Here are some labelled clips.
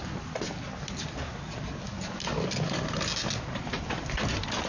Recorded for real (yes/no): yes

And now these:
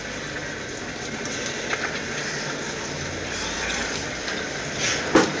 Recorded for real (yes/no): yes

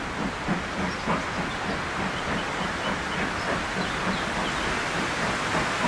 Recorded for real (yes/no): yes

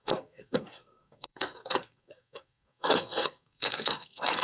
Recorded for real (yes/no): no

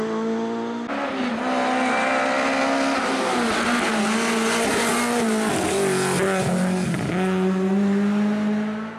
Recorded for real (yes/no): yes